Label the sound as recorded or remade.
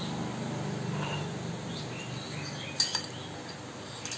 recorded